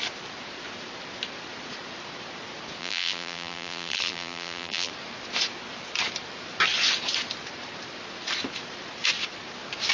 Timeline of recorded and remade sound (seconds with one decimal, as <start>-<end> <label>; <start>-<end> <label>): 0.0-2.8 recorded; 2.8-4.9 remade; 4.9-9.9 recorded